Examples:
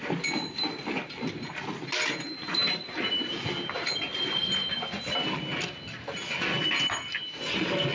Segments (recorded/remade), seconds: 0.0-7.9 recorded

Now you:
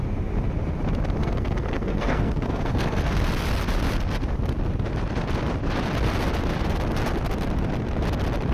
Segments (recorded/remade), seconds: 0.0-1.2 recorded; 1.2-3.1 remade; 3.1-8.5 recorded

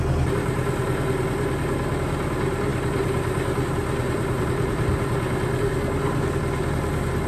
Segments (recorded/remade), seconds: 0.0-2.7 recorded; 2.7-4.4 remade; 4.4-7.3 recorded

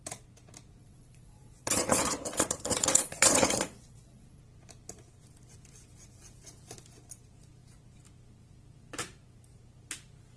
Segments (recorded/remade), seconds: 0.0-0.8 recorded; 0.8-4.4 remade; 4.4-10.4 recorded

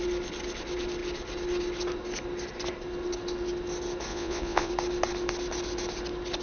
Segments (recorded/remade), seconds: 0.0-4.1 recorded; 4.1-4.7 remade; 4.7-6.4 recorded

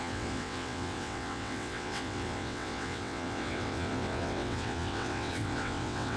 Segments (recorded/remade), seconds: 0.0-6.2 remade